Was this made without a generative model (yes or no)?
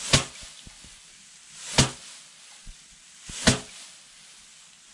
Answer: yes